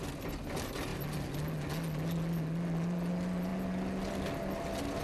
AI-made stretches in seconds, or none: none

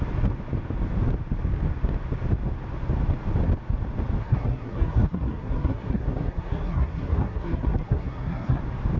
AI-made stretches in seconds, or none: 4.2-8.6 (codec, SNAC)

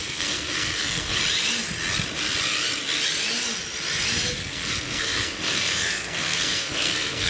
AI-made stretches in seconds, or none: 0.0-1.2 (codec, SNAC); 4.4-7.3

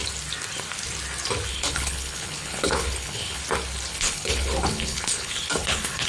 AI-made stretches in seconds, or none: 1.5-3.4 (codec, HILCodec); 3.9-6.1

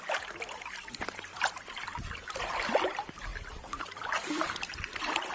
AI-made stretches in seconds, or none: none